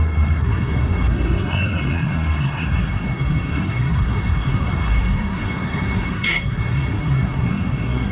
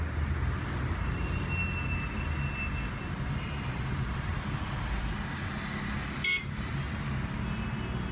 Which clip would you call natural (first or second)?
second